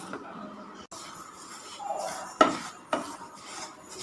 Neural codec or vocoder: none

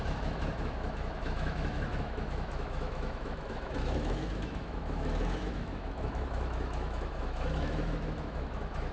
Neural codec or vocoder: autoencoder, DAC-VAE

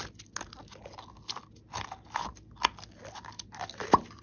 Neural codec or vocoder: none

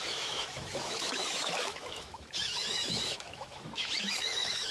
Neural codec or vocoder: autoencoder, DAC-VAE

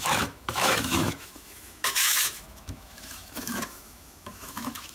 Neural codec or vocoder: autoencoder, DAC-VAE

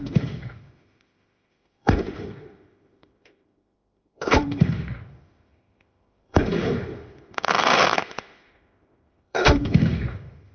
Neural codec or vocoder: autoencoder, DAC-VAE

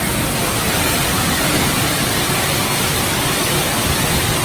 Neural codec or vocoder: none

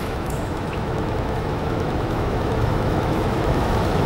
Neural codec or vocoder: autoencoder, DAC-VAE